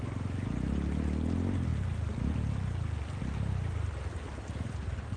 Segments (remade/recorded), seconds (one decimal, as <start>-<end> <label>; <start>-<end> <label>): 0.0-5.2 recorded